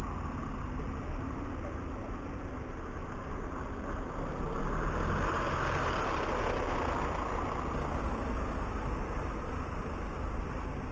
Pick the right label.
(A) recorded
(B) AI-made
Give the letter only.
A